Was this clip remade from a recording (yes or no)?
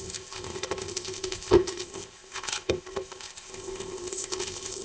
yes